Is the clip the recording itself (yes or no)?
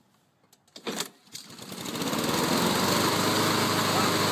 yes